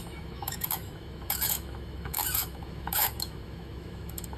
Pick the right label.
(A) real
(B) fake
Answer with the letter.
B